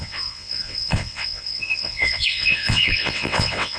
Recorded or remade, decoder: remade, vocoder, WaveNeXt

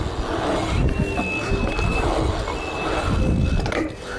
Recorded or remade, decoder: recorded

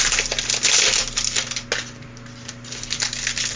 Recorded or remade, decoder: recorded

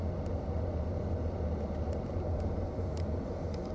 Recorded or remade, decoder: recorded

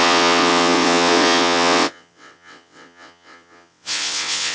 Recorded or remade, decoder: remade, vocoder, WaveNeXt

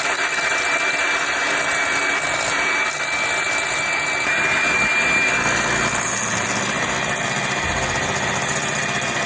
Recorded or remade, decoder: recorded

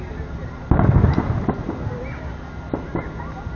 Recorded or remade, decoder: recorded